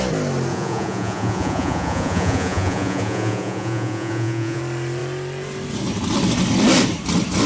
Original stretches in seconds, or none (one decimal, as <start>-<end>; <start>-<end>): 0.0-0.5; 4.6-7.5